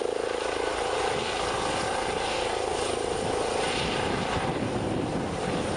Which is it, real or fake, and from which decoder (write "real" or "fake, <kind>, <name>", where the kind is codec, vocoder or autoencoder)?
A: real